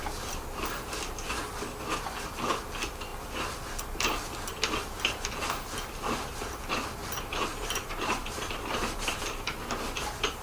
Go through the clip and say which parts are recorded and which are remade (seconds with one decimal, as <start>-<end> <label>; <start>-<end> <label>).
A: 0.0-7.0 recorded; 7.0-9.2 remade; 9.2-10.4 recorded